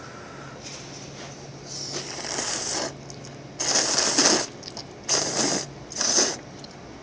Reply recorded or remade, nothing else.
recorded